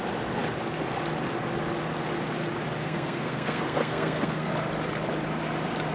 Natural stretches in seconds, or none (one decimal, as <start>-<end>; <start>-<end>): 0.0-2.8; 4.5-5.9